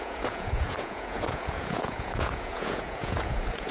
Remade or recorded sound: remade